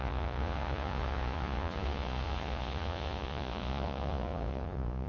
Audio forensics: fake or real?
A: fake